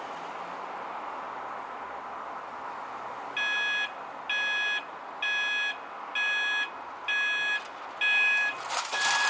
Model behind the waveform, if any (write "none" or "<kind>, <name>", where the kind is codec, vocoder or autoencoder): none